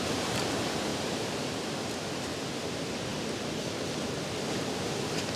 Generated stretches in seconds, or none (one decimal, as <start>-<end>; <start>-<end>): none